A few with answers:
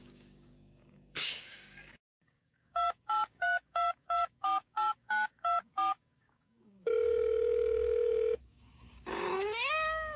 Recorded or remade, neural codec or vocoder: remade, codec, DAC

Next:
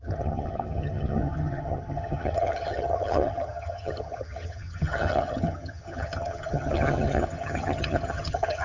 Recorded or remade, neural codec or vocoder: remade, vocoder, HiFi-GAN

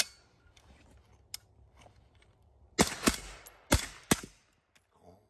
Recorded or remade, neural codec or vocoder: recorded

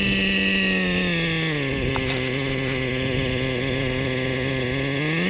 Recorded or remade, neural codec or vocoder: recorded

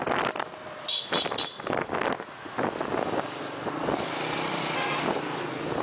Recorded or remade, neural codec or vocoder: recorded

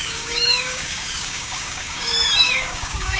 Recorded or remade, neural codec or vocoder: remade, codec, DAC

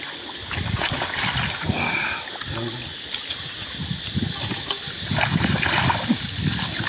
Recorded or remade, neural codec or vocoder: recorded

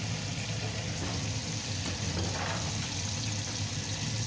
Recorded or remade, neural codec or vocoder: recorded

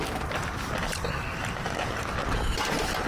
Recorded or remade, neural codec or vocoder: recorded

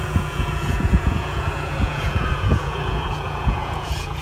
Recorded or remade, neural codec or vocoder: remade, vocoder, Vocos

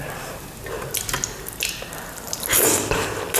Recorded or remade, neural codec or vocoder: recorded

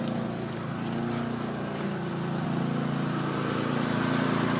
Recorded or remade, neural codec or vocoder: recorded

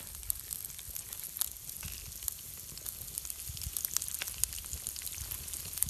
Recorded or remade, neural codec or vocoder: recorded